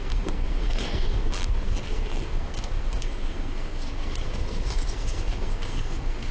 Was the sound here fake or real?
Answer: fake